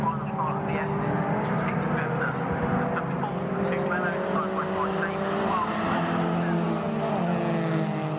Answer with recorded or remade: recorded